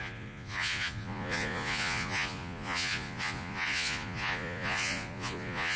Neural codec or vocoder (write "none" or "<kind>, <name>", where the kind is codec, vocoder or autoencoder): vocoder, Vocos